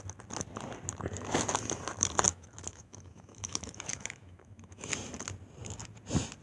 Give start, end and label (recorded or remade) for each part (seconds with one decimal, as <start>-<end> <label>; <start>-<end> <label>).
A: 0.0-2.3 recorded; 2.3-4.9 remade; 4.9-6.4 recorded